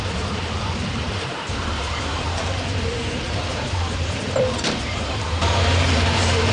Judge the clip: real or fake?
fake